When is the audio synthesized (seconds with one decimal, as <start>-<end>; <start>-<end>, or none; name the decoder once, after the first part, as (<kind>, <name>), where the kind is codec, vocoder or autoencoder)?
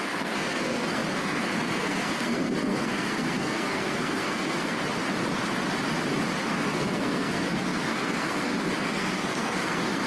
0.0-4.8 (codec, SNAC); 6.4-10.1